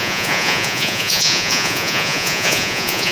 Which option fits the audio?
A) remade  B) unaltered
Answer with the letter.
A